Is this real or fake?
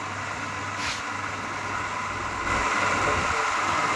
real